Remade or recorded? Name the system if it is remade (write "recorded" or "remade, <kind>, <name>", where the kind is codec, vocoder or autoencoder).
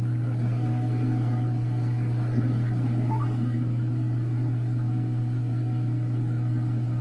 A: remade, codec, SNAC